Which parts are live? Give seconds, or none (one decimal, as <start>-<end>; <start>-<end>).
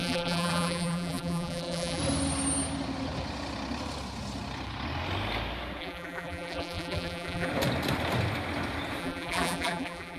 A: 2.0-5.8; 7.5-9.0